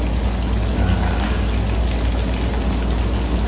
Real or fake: real